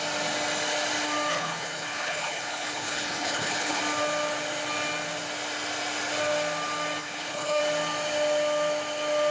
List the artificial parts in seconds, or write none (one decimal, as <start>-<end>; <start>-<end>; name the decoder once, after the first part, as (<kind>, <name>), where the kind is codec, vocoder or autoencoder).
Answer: 1.3-3.8 (codec, HILCodec); 7.0-7.6